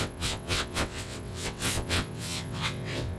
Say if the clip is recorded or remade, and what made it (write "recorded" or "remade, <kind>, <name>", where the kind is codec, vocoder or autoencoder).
remade, vocoder, WaveNeXt